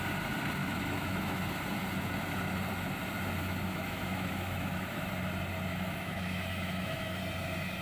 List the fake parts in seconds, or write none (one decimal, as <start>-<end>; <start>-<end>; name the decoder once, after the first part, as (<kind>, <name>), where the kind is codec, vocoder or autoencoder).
0.6-1.4 (autoencoder, DAC-VAE); 3.4-5.1; 5.7-7.2